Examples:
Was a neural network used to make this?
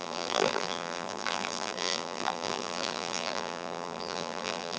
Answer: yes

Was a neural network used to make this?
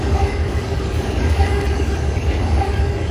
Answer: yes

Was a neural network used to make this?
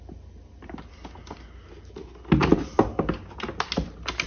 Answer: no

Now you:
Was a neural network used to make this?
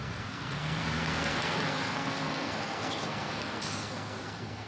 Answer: yes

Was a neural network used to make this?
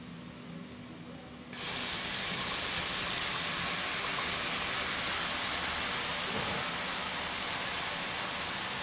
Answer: no